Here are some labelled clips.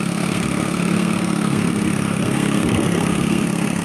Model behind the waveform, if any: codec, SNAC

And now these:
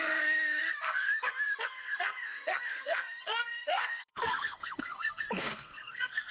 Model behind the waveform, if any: codec, SNAC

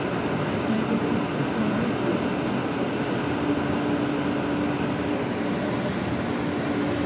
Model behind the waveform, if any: none